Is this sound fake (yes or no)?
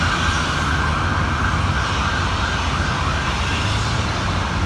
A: no